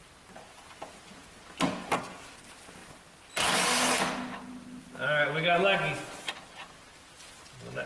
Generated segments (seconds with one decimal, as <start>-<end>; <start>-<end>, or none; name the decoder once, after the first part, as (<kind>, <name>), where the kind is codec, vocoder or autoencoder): none

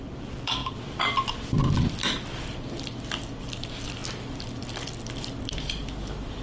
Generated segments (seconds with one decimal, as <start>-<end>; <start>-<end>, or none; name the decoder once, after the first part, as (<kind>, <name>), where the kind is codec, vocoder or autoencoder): 0.0-0.6 (vocoder, BigVGAN v2); 1.3-6.4

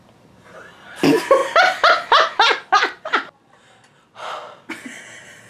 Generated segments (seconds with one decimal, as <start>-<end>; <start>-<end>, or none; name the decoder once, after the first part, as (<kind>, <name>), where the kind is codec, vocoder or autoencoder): none

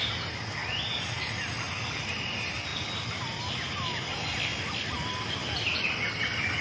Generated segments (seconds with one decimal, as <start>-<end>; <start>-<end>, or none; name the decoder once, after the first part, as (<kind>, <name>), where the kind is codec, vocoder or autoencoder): none

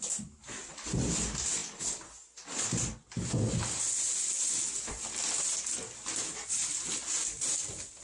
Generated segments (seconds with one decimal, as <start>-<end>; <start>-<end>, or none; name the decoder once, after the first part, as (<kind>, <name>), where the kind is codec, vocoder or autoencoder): none

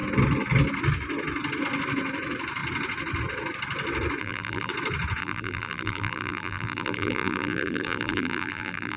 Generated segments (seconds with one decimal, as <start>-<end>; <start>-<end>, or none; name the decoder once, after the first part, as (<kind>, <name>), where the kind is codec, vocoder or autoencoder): 4.2-4.7 (vocoder, BigVGAN v2); 5.2-9.0

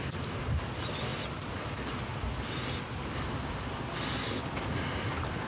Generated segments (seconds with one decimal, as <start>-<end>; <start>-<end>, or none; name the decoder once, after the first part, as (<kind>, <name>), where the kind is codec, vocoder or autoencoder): 0.0-1.1 (vocoder, BigVGAN v2); 4.4-5.5